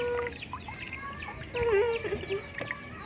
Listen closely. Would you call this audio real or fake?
real